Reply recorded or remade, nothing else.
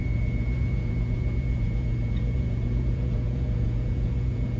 remade